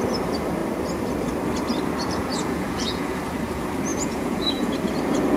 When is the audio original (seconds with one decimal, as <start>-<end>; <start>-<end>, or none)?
0.0-2.0; 3.2-3.9; 4.7-5.4

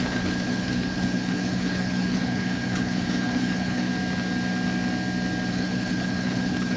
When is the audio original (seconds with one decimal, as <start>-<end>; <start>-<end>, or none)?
3.9-5.5